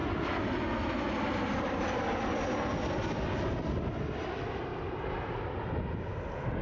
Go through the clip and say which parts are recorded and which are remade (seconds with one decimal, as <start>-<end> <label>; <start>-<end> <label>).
0.0-6.6 recorded